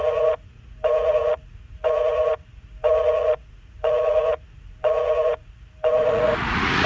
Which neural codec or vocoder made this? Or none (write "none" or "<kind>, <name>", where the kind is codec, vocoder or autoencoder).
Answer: vocoder, Vocos